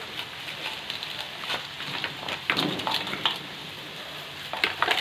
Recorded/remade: recorded